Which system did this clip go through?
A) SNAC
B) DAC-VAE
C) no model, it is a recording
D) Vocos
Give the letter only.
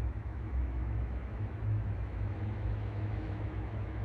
B